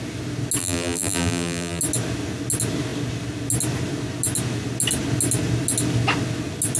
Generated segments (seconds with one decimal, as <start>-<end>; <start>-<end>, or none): 0.6-1.8